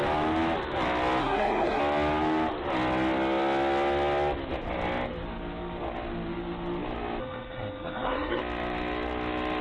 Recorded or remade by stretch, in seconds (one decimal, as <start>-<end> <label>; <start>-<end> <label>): 0.0-1.2 recorded; 1.2-1.8 remade; 1.8-7.2 recorded; 7.2-8.4 remade; 8.4-9.6 recorded